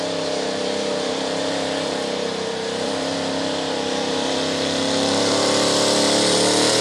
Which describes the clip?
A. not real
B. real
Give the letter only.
A